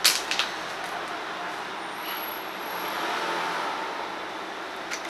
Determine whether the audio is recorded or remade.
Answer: recorded